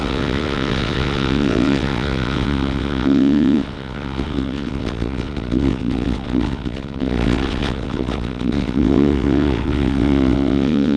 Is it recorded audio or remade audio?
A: remade